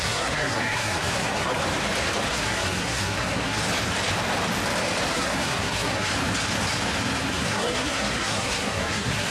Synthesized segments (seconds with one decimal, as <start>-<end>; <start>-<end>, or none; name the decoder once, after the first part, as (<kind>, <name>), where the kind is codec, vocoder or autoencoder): 0.0-1.6 (codec, SNAC); 2.3-3.6; 5.1-6.1; 7.3-9.3